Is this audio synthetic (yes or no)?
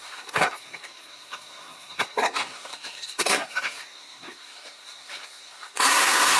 yes